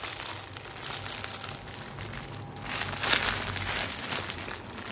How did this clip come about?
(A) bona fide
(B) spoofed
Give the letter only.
A